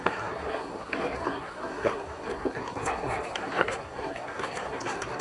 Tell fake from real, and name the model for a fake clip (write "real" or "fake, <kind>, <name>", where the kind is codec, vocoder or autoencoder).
fake, codec, SNAC